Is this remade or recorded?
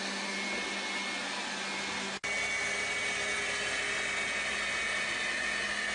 recorded